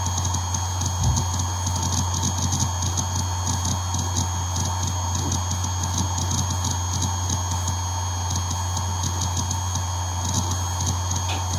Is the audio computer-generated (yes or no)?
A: no